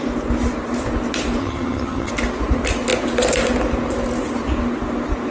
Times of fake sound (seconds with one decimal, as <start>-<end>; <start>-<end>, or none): 1.4-2.1